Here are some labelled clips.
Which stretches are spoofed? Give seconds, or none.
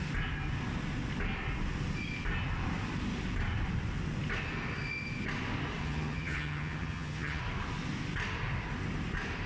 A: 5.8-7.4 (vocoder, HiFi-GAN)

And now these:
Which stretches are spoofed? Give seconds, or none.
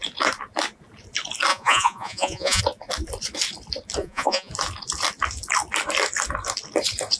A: 1.5-2.6 (vocoder, Vocos); 4.0-4.5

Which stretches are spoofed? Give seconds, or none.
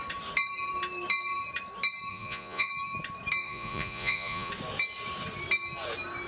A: 2.1-2.7 (vocoder, Vocos); 3.4-4.5